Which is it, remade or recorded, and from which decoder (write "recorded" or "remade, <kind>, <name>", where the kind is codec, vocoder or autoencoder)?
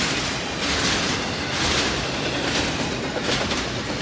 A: recorded